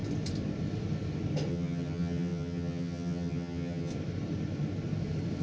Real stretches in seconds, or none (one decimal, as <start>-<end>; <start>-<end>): 0.0-1.5; 3.9-5.4